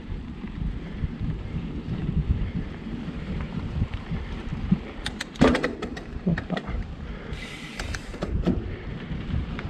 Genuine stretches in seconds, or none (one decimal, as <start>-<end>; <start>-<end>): 2.0-2.6